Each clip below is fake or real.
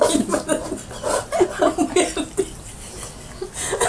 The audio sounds real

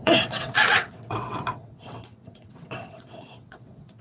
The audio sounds fake